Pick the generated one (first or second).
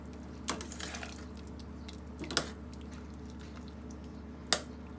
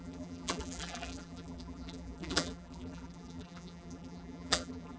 second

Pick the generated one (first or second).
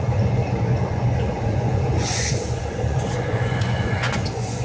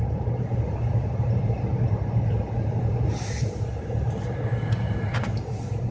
first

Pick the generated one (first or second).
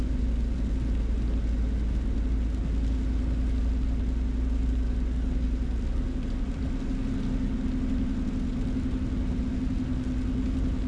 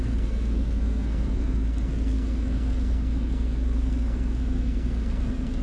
second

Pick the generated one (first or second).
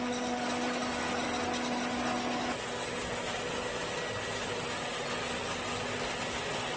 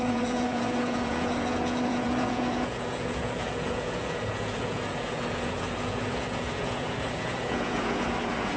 second